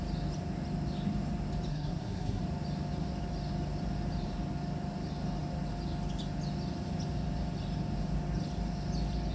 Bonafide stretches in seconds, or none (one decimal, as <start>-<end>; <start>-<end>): 0.0-1.7; 2.4-9.3